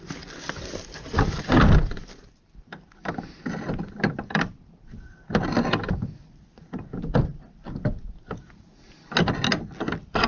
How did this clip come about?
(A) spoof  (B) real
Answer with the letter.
B